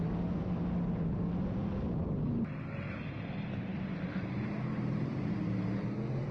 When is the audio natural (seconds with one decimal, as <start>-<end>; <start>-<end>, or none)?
0.0-6.3